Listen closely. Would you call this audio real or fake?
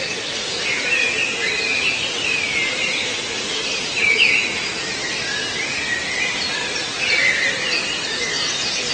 real